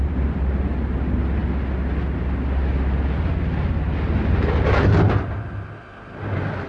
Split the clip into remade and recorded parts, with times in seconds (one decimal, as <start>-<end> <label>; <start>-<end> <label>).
0.0-6.7 recorded